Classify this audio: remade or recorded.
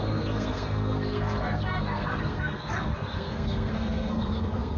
remade